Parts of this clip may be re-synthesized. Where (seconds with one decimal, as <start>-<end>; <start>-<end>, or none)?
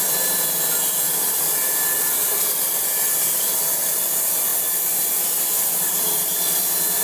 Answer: 0.0-7.0